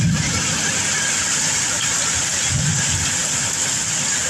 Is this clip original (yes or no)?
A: yes